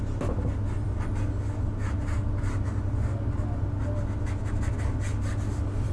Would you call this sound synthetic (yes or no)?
no